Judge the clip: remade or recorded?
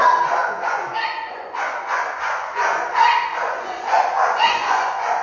remade